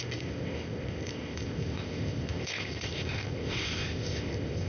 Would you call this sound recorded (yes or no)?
no